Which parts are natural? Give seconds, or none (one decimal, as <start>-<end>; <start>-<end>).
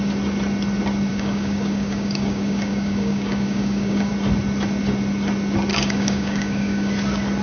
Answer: 0.0-1.1; 4.1-5.7; 6.9-7.4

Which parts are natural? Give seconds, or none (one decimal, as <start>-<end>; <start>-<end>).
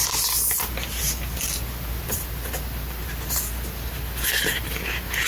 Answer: 0.0-5.3